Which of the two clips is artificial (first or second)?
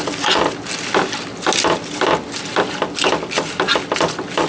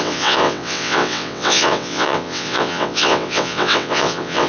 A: second